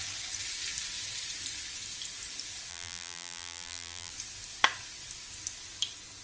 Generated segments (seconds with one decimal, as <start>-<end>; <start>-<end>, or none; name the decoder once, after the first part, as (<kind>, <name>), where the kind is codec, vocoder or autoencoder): 2.7-4.1 (vocoder, BigVGAN v2)